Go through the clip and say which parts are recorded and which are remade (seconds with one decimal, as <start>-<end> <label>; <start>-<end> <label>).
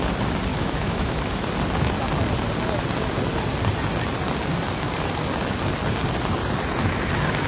0.0-0.5 recorded; 0.5-1.3 remade; 1.3-7.5 recorded